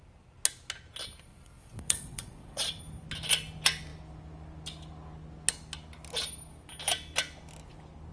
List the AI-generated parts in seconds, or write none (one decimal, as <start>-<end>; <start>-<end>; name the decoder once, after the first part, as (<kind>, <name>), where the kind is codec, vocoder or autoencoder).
1.3-2.8 (vocoder, WaveNeXt)